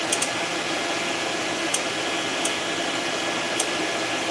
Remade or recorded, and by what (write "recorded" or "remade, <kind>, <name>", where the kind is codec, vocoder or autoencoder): recorded